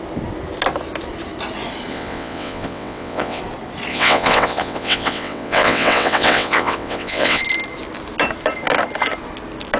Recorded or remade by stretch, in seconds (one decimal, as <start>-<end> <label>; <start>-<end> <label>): 0.0-1.9 recorded; 1.9-3.4 remade; 3.4-3.9 recorded; 3.9-7.4 remade; 7.4-9.8 recorded